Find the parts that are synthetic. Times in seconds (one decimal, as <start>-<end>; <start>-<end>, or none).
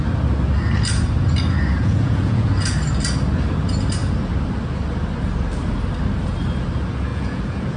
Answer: 1.8-2.5; 7.1-7.8